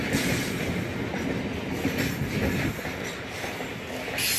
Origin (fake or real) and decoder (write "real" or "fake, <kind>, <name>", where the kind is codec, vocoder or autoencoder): real